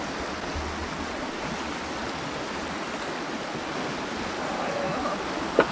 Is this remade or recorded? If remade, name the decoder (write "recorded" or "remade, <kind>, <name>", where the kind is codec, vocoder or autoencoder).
recorded